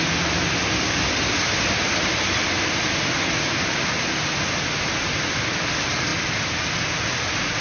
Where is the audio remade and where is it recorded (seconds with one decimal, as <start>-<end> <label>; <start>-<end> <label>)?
0.0-7.6 recorded